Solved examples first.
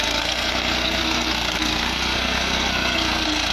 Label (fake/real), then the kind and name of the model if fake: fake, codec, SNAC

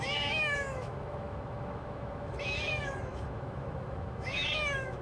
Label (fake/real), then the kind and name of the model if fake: fake, autoencoder, DAC-VAE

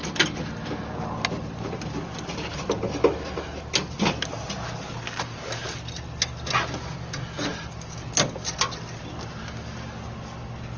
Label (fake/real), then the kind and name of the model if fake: real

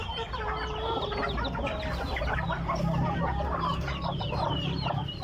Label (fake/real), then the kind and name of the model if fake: real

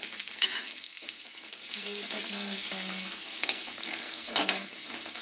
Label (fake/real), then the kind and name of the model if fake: fake, codec, SNAC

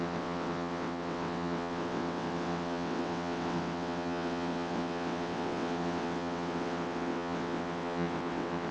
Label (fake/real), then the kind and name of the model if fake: fake, vocoder, WaveNeXt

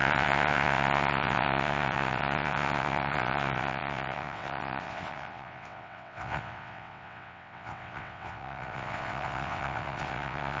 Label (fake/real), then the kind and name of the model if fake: fake, vocoder, WaveNeXt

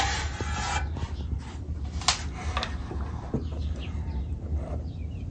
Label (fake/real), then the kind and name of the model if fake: real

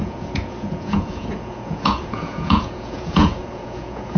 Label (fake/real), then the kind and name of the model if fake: fake, vocoder, Vocos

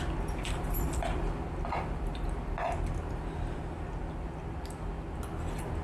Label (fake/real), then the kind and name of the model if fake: real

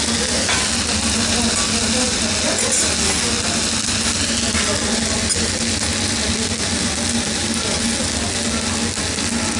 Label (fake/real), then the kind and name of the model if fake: real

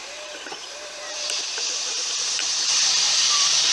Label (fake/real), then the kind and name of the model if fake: fake, vocoder, BigVGAN v2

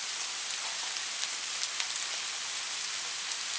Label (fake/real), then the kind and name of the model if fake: real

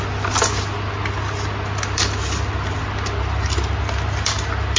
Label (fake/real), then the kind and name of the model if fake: real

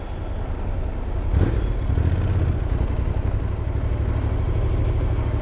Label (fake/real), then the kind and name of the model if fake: real